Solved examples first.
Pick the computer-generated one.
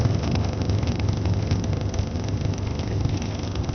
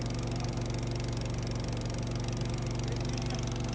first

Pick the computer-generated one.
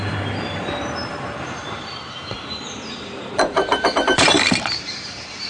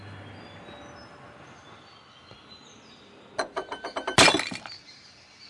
first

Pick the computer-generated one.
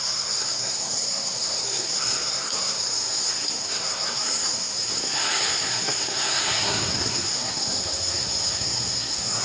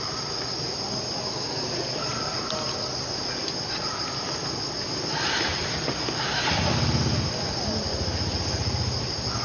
first